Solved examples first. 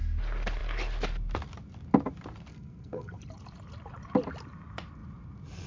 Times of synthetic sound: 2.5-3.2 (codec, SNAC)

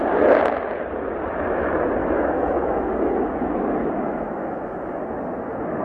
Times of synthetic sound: 2.0-3.2 (autoencoder, DAC-VAE); 4.1-5.0